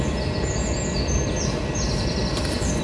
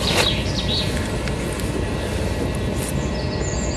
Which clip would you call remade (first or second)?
first